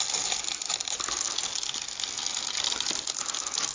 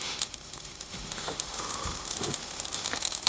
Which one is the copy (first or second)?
second